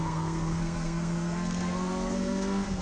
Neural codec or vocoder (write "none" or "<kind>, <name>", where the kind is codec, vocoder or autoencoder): codec, SNAC